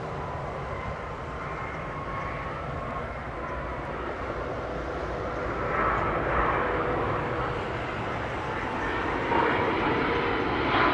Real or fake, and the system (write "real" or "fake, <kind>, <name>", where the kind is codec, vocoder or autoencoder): real